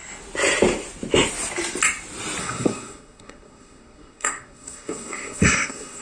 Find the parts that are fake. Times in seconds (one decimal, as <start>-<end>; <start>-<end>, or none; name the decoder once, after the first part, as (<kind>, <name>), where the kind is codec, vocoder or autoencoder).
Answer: 2.4-6.0 (codec, SNAC)